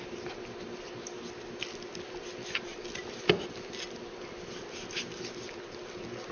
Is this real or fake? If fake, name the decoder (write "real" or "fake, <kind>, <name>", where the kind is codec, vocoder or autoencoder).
real